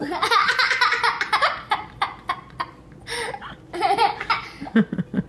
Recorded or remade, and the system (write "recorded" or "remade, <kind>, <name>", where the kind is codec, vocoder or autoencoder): remade, vocoder, BigVGAN v2